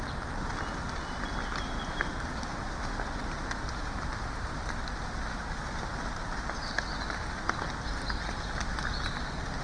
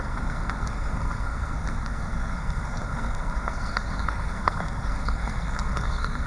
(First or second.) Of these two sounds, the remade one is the second